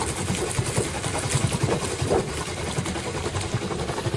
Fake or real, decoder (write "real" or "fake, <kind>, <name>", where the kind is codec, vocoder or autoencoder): real